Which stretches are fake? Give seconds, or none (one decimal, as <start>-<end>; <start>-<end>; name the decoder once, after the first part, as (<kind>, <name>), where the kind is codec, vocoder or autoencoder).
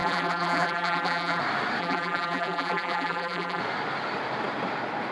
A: 0.0-1.4 (vocoder, BigVGAN v2); 1.8-3.6